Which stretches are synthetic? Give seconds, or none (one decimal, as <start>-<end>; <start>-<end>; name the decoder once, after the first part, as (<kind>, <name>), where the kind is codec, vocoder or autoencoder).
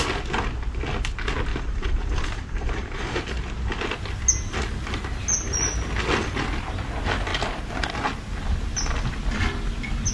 1.5-3.2 (vocoder, BigVGAN v2)